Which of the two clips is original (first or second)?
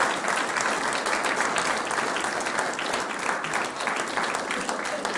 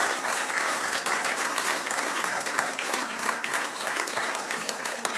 first